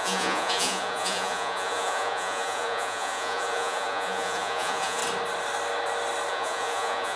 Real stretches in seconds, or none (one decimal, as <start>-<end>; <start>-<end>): 5.0-6.3